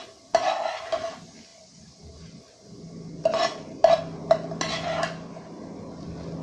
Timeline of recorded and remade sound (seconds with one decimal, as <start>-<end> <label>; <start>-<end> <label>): 0.0-6.4 recorded